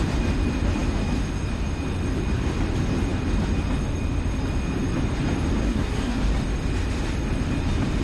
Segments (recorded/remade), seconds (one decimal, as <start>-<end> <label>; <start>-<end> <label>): 0.0-5.6 recorded; 5.6-6.2 remade; 6.2-8.0 recorded